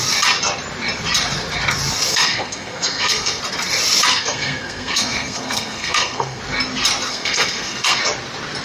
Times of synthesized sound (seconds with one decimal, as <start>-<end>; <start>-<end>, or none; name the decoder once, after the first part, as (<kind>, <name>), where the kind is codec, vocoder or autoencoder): 2.1-3.4 (codec, SNAC); 4.1-6.4; 7.1-8.0